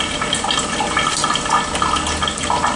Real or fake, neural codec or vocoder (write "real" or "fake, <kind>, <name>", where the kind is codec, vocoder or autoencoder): real